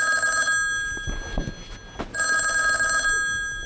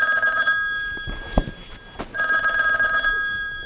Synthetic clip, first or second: second